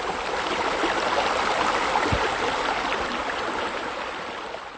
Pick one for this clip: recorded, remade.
recorded